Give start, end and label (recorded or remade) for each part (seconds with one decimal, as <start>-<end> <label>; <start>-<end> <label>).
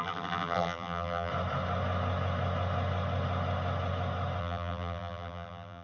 0.0-1.3 remade; 1.3-4.4 recorded; 4.4-5.8 remade